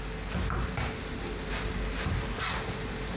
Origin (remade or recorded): recorded